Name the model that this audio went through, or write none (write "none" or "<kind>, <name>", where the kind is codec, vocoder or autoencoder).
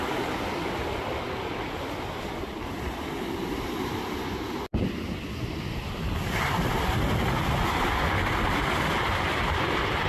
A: none